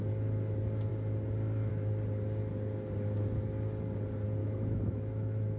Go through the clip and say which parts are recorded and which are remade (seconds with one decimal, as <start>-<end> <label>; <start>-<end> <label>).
0.0-4.4 recorded; 4.4-5.6 remade